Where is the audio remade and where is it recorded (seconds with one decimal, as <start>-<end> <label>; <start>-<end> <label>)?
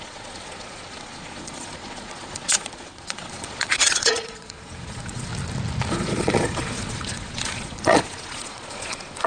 0.0-5.3 remade; 5.3-5.9 recorded; 5.9-9.3 remade